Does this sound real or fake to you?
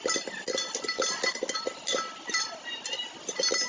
real